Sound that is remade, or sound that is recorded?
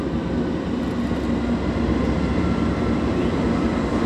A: recorded